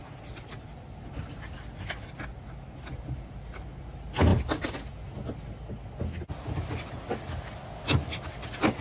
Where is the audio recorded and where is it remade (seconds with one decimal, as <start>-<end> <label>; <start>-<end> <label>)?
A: 0.0-8.8 recorded